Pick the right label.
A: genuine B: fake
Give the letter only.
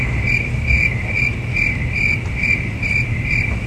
A